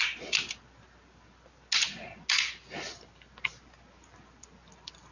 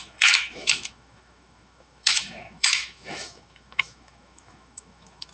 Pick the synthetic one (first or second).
second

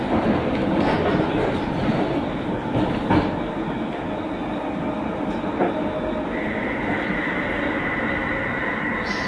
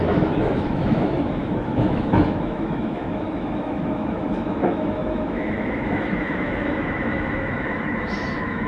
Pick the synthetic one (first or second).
second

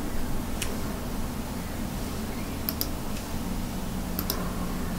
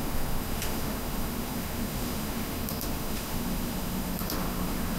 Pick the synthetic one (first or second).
second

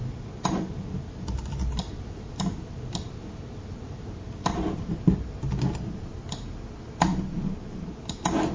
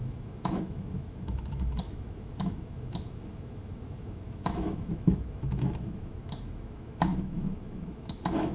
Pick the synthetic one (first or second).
second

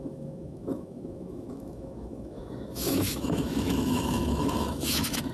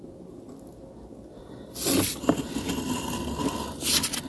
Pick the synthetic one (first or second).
first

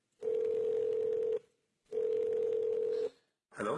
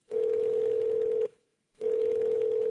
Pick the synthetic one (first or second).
second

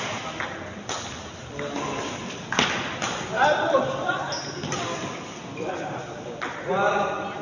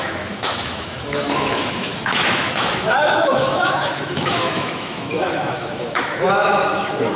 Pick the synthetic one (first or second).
second